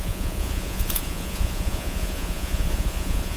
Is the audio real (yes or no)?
no